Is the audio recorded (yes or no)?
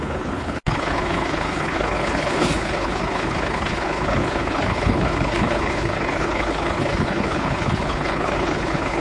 no